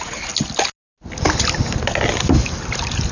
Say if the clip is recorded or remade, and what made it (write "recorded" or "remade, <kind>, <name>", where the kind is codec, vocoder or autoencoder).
recorded